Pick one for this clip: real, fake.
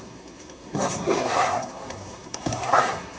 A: fake